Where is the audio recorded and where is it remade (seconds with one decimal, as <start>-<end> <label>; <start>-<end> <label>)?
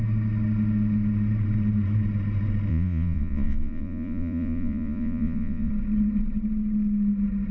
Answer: 0.0-2.7 recorded; 2.7-5.7 remade; 5.7-7.5 recorded